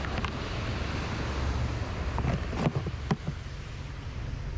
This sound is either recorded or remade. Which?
recorded